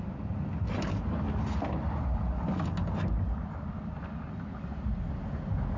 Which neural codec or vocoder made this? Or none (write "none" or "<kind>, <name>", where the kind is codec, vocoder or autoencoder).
none